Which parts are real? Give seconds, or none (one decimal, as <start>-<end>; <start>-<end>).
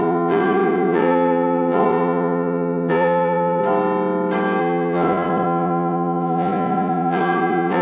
3.6-4.6